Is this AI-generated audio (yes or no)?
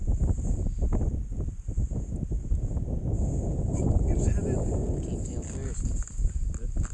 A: no